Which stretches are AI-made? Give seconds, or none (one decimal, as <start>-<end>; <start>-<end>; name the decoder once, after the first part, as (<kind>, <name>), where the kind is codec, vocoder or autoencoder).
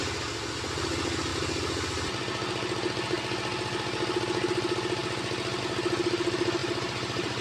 6.6-7.4 (vocoder, BigVGAN v2)